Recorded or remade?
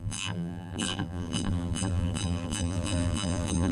remade